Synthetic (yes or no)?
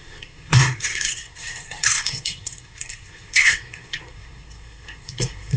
yes